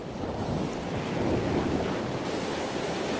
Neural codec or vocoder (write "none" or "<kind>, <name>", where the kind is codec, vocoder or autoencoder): none